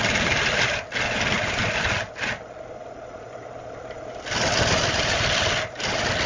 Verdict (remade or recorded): recorded